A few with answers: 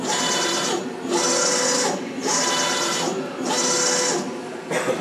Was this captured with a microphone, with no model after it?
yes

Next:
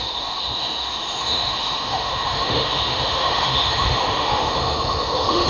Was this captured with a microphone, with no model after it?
no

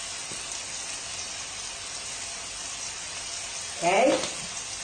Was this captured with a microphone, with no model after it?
yes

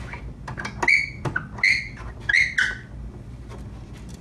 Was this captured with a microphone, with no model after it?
yes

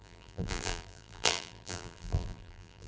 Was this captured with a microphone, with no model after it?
no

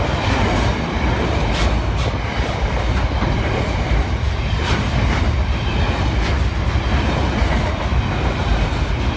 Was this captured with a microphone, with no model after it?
yes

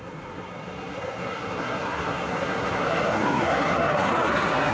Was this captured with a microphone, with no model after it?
no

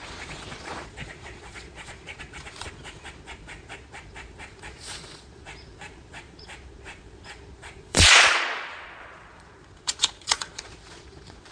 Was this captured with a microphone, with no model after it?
no